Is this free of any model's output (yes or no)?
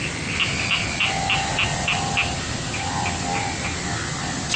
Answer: yes